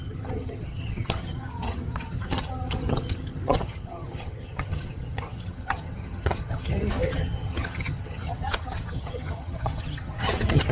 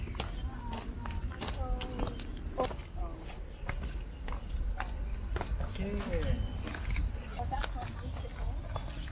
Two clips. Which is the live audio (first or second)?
second